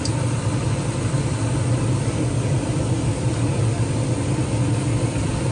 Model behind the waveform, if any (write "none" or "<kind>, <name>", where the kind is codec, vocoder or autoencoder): vocoder, BigVGAN v2